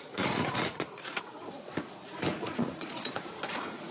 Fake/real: fake